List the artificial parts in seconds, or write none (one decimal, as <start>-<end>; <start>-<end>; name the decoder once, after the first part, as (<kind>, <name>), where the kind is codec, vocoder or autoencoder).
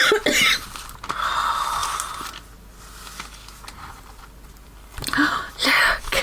none